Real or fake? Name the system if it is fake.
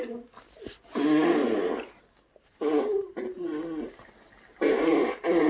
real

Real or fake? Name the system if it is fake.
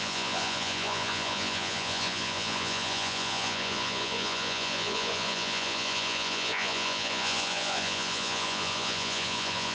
fake, vocoder, Vocos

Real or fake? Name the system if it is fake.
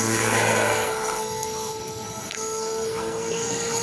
fake, codec, SNAC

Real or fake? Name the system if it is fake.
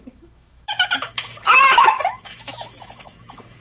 fake, autoencoder, DAC-VAE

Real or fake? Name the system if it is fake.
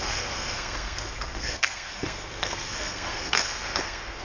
fake, codec, SNAC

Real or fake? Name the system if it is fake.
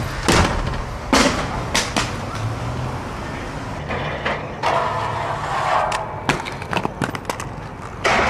real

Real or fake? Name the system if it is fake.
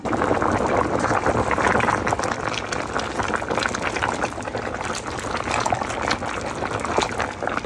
real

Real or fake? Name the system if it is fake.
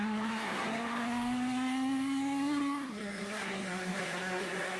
fake, codec, SNAC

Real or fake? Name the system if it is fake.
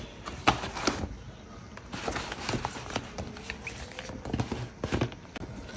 real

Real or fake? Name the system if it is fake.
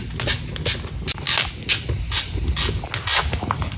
real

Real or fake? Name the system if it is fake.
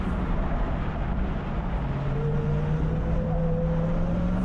real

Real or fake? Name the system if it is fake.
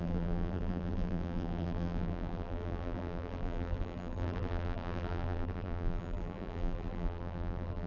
fake, vocoder, BigVGAN v2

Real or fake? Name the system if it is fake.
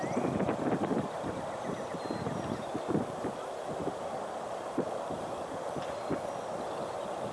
real